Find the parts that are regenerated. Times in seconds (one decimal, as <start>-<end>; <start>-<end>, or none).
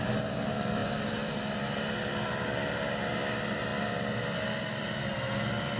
0.8-1.7